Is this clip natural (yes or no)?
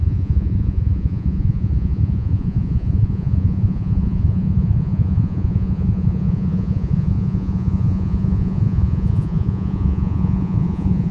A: no